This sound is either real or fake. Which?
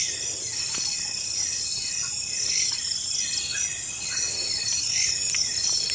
real